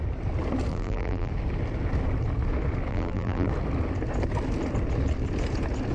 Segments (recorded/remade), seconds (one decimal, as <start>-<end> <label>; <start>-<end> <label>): 0.0-0.7 recorded; 0.7-1.3 remade; 1.3-2.9 recorded; 2.9-3.5 remade; 3.5-5.9 recorded